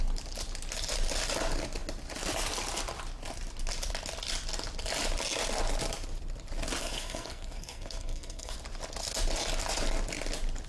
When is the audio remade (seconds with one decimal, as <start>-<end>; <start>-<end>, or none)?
6.8-8.5